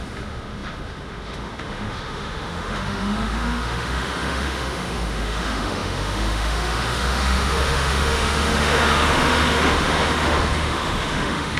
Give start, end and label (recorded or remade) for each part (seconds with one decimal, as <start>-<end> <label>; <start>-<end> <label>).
0.0-11.6 remade